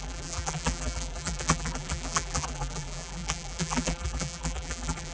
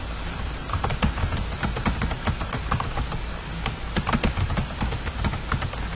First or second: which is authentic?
second